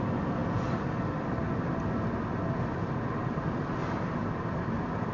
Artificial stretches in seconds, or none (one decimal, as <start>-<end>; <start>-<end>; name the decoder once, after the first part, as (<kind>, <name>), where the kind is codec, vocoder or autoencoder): 4.2-5.1 (vocoder, BigVGAN v2)